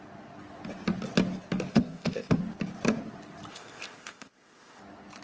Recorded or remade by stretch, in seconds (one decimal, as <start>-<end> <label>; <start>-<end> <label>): 0.0-1.7 recorded; 1.7-2.4 remade; 2.4-3.5 recorded; 3.5-4.8 remade; 4.8-5.2 recorded